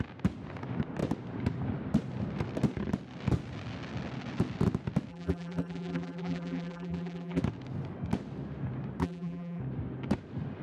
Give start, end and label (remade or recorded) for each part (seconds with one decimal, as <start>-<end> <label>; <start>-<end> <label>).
0.0-5.1 recorded; 5.1-7.4 remade; 7.4-9.0 recorded; 9.0-9.6 remade; 9.6-10.6 recorded